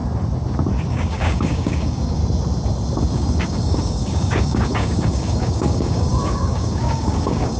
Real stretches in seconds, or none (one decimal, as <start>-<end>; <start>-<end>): 0.0-0.9; 2.2-3.1